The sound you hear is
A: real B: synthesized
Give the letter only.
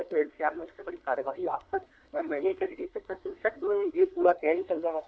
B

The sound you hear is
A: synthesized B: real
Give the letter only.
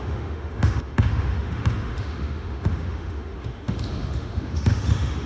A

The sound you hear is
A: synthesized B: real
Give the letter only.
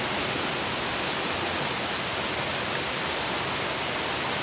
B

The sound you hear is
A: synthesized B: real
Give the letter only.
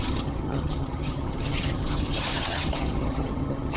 A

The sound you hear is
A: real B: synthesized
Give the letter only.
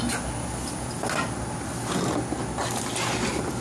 A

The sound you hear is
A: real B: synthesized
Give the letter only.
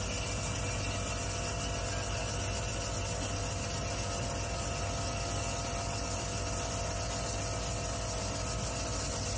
A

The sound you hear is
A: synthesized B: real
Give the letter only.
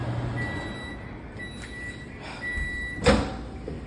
B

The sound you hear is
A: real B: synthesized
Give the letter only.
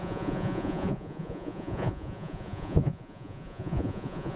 B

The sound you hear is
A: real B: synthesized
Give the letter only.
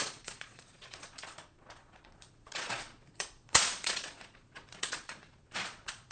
B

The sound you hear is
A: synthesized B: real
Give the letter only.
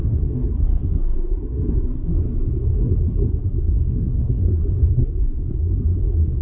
A